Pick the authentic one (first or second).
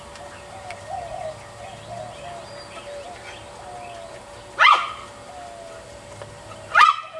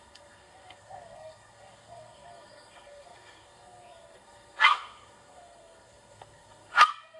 first